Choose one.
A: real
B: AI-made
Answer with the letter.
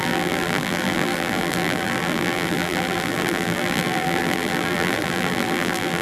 B